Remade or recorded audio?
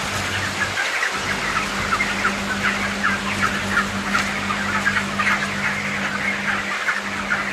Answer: recorded